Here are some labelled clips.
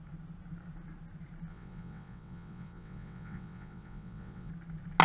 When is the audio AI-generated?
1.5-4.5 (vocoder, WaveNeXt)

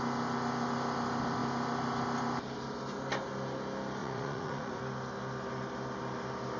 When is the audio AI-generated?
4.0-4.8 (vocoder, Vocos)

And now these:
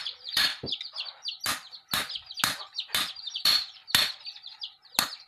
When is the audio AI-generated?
0.0-0.5 (vocoder, BigVGAN v2); 3.1-3.8

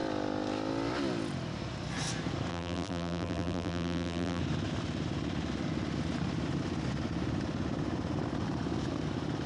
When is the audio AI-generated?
2.5-4.4 (vocoder, BigVGAN v2)

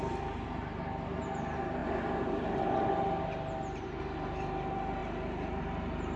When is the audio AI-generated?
none